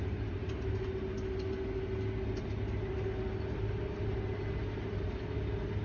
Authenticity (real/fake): real